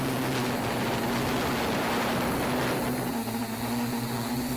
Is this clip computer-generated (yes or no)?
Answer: no